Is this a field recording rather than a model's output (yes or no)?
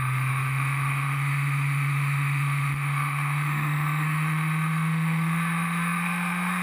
no